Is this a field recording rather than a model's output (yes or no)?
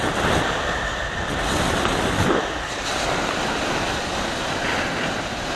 yes